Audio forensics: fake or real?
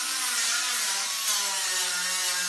real